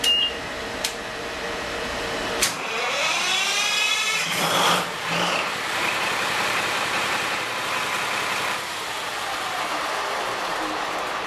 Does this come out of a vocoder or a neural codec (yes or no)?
yes